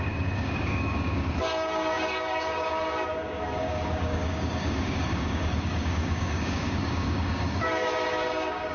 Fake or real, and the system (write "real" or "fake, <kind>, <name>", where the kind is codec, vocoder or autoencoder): fake, codec, DAC